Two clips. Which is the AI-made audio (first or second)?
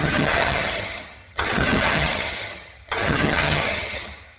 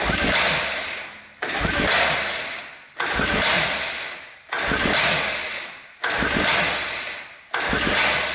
first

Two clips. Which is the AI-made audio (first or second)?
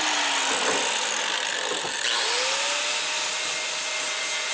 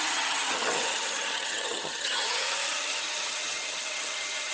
second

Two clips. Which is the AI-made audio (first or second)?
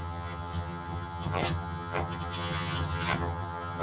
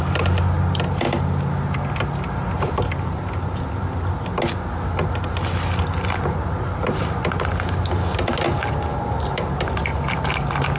first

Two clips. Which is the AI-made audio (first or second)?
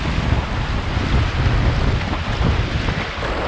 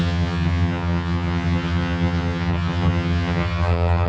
second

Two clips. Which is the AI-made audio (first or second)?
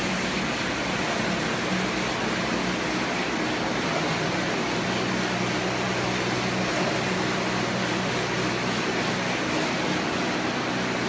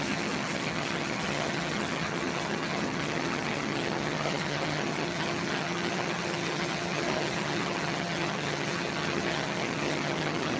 second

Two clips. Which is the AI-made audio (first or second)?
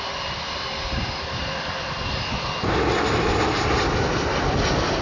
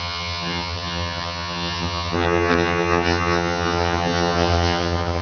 second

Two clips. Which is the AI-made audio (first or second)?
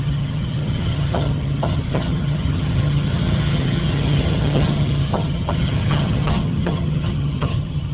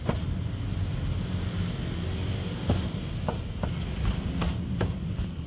first